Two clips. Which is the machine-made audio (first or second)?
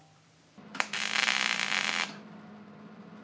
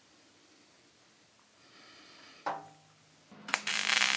first